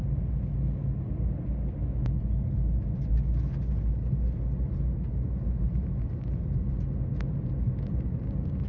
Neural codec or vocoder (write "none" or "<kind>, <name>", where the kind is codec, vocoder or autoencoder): none